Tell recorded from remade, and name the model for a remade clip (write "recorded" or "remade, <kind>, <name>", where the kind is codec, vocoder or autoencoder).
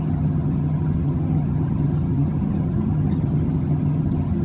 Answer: remade, vocoder, HiFi-GAN